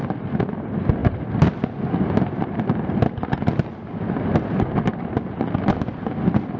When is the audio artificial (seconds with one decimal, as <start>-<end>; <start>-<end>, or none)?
none